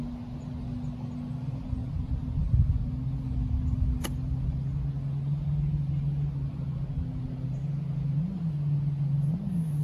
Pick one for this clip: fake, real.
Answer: real